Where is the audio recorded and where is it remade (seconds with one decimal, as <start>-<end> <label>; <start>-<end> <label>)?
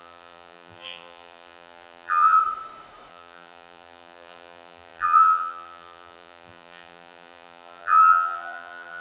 0.0-2.4 remade; 2.4-3.1 recorded; 3.1-9.0 remade